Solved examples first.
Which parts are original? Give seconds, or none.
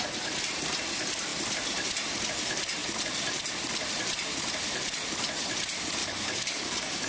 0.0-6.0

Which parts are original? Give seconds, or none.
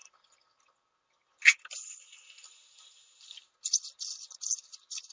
0.0-5.1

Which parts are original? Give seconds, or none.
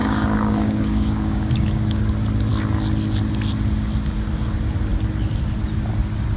2.0-6.4